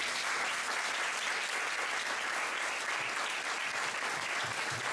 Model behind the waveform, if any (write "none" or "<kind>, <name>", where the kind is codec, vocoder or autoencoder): none